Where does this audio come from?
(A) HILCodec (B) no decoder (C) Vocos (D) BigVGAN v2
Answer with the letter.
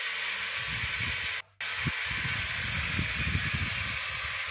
B